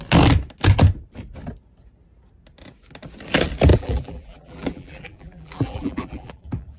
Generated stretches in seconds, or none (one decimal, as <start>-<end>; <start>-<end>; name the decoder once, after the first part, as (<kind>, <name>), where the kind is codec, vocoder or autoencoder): 3.7-6.8 (vocoder, BigVGAN v2)